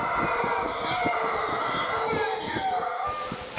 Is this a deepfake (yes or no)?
no